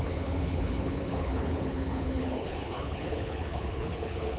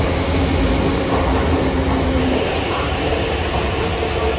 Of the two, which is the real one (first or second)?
second